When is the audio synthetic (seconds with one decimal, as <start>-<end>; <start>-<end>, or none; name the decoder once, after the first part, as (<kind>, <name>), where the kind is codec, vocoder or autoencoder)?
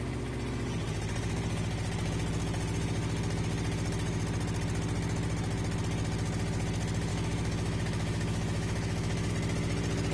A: 7.1-9.3 (autoencoder, DAC-VAE)